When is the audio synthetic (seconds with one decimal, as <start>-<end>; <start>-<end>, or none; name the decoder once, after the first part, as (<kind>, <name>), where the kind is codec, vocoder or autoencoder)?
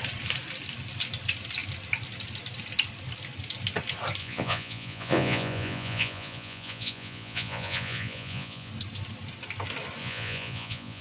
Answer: 4.2-8.7 (vocoder, Vocos); 10.0-11.0